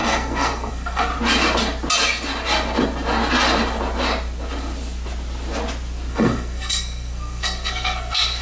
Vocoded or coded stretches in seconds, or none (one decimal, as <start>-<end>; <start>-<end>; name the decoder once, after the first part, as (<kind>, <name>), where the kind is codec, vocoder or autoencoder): 0.0-1.1 (codec, SNAC); 6.1-8.4